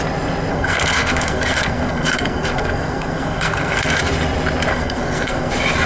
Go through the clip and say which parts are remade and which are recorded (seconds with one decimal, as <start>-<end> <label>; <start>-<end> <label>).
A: 0.0-0.5 recorded; 0.5-4.0 remade; 4.0-4.7 recorded; 4.7-5.5 remade; 5.5-5.9 recorded